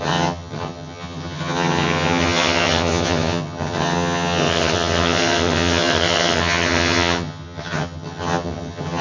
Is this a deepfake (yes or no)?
yes